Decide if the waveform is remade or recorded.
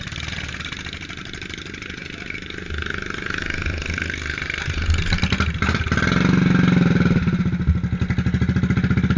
recorded